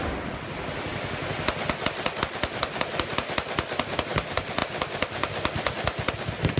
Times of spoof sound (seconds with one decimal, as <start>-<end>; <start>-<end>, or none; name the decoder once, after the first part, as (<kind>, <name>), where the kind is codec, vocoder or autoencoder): none